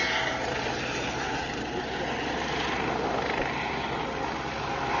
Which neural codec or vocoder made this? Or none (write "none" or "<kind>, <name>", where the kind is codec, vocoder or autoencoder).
none